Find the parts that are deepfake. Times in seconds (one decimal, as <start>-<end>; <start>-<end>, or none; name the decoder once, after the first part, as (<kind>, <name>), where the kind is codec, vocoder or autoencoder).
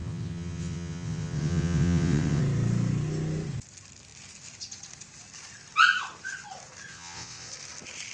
0.0-2.4 (vocoder, WaveNeXt); 6.9-7.5